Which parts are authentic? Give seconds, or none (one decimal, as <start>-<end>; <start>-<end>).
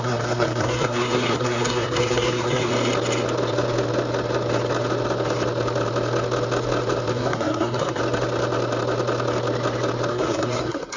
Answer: 2.7-7.1; 8.0-10.1